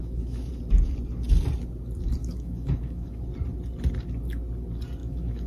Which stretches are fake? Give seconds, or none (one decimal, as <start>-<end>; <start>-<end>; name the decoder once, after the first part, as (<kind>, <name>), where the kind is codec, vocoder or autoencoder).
0.0-0.5 (autoencoder, DAC-VAE); 2.2-3.2; 5.0-5.5